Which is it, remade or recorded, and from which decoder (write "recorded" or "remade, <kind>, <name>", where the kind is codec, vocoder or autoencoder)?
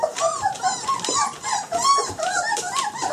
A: recorded